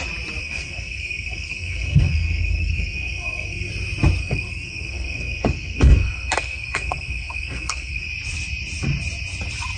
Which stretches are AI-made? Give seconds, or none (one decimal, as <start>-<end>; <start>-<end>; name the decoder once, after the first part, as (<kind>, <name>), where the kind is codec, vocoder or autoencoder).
0.4-3.7 (codec, SNAC); 4.2-8.1